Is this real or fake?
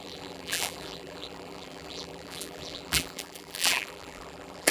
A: fake